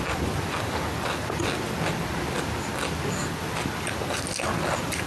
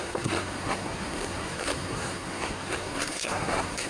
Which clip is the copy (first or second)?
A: second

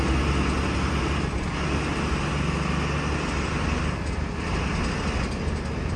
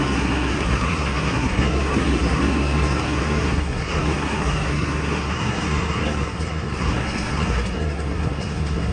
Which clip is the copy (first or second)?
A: second